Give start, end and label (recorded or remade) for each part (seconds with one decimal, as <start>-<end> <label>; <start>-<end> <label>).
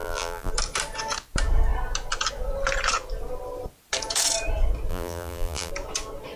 0.0-0.5 remade; 0.5-4.9 recorded; 4.9-5.7 remade; 5.7-6.4 recorded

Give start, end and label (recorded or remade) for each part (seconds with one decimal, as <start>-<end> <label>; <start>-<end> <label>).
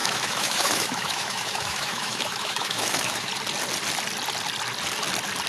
0.0-3.3 remade; 3.3-5.5 recorded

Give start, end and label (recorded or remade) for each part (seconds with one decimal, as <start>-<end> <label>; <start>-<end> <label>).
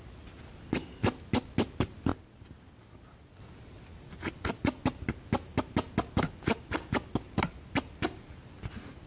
0.0-9.1 recorded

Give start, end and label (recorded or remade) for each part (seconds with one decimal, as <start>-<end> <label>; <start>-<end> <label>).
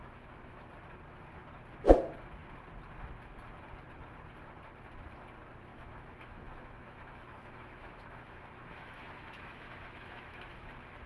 0.0-0.7 remade; 0.7-5.7 recorded; 5.7-10.7 remade; 10.7-11.1 recorded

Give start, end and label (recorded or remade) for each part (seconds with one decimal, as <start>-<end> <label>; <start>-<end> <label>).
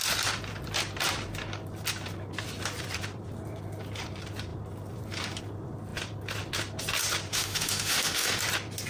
0.0-7.3 recorded; 7.3-8.4 remade; 8.4-8.9 recorded